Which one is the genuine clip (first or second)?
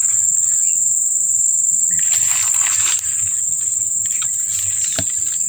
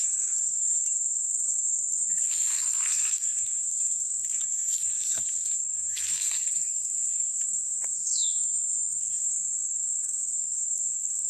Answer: first